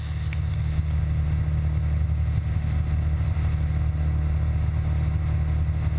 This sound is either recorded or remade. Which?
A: recorded